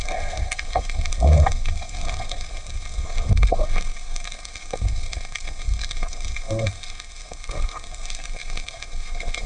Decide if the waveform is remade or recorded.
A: remade